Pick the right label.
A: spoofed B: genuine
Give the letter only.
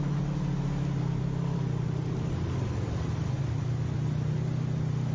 B